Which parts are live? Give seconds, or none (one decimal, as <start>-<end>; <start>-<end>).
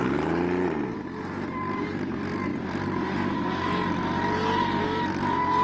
0.0-5.6